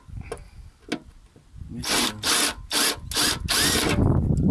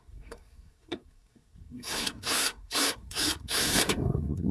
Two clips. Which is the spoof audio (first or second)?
second